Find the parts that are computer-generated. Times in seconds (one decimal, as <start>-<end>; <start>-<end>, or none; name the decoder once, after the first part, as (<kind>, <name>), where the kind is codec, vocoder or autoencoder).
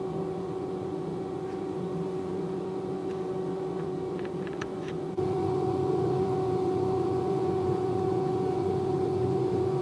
0.0-9.8 (vocoder, Vocos)